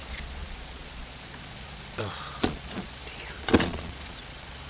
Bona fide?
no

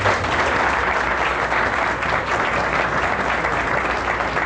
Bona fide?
yes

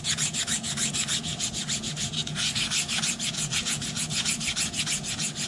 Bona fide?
no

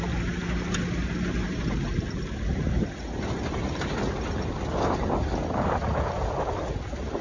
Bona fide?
yes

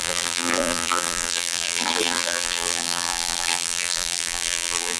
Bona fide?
no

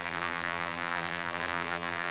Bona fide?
no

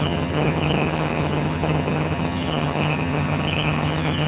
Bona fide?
no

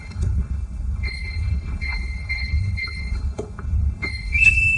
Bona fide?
no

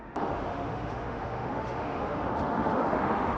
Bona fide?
no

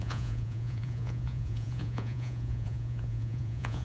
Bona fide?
no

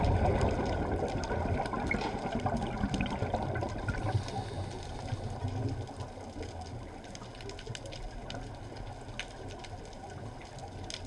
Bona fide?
yes